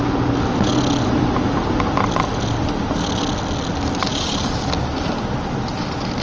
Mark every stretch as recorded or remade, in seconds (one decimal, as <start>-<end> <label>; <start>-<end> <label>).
0.0-6.2 recorded